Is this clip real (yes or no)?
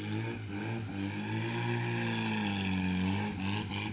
yes